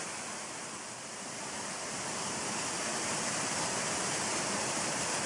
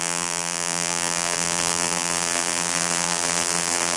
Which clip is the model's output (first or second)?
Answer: second